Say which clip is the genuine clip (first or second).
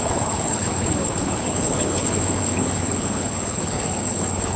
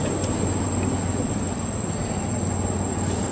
second